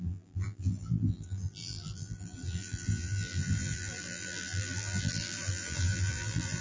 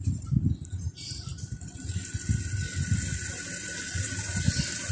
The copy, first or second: first